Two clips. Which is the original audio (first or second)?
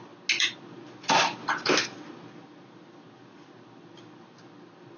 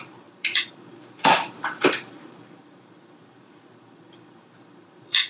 first